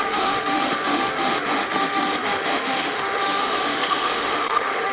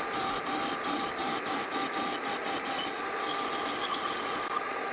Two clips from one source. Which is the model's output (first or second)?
first